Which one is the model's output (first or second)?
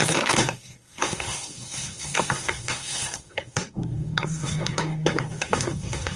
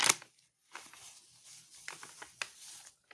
first